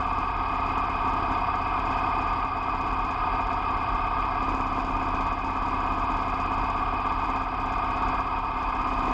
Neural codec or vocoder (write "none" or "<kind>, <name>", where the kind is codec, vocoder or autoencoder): none